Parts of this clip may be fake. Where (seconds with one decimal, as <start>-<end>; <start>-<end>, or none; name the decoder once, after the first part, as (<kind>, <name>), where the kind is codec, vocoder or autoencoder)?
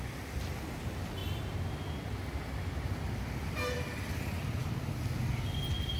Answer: none